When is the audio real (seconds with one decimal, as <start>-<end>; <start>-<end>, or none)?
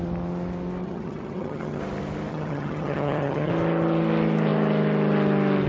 0.0-0.8; 1.8-2.3; 3.5-5.7